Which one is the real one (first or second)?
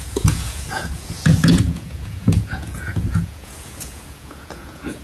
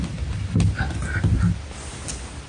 second